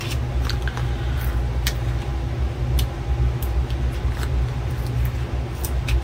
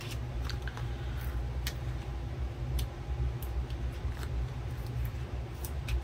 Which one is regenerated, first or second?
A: second